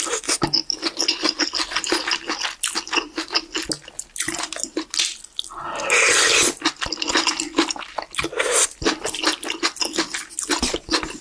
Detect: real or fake real